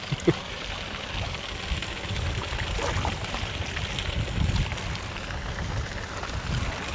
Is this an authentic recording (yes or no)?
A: yes